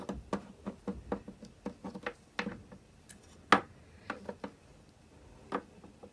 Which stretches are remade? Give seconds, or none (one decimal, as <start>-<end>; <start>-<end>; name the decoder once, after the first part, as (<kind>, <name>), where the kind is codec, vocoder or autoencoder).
none